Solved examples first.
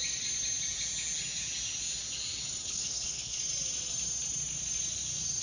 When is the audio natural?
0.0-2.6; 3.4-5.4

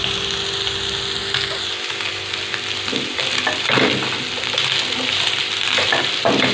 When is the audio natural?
0.0-6.5

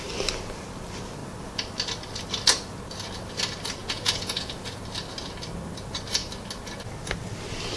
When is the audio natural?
0.0-3.8; 4.8-7.8

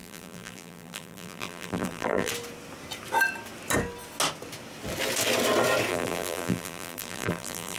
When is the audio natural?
2.3-5.9

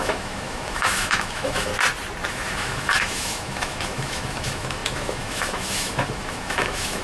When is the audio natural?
1.7-2.3